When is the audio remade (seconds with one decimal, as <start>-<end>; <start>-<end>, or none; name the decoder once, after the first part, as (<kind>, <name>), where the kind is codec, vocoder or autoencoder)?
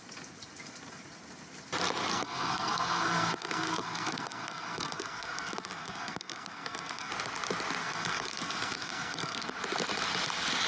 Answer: 2.1-7.1 (codec, SNAC); 7.8-9.5